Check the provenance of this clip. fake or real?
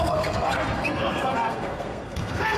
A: fake